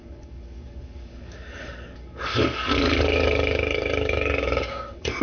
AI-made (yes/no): yes